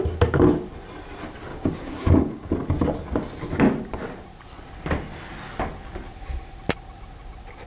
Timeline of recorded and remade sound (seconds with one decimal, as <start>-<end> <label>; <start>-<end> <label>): 0.0-1.5 recorded; 1.5-2.5 remade; 2.5-7.7 recorded